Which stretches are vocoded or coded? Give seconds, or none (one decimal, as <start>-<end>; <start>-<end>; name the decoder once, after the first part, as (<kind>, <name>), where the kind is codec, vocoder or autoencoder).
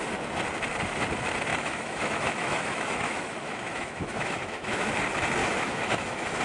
1.5-4.9 (autoencoder, DAC-VAE); 5.4-6.4